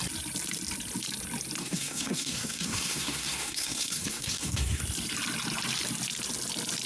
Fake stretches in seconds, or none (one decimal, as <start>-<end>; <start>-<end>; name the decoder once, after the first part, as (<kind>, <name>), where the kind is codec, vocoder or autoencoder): 1.6-4.8 (codec, SNAC)